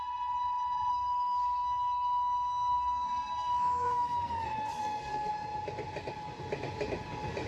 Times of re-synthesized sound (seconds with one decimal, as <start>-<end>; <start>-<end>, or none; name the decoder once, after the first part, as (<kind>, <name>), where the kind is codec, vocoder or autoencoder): 0.9-5.3 (codec, SNAC)